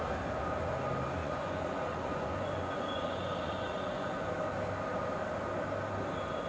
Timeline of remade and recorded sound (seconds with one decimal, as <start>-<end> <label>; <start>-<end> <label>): 0.0-1.2 recorded; 1.2-4.3 remade; 4.3-6.5 recorded